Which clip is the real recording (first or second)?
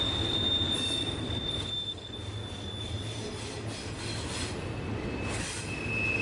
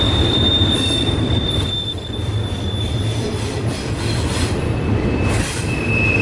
first